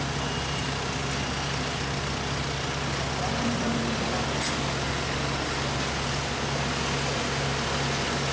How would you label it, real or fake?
real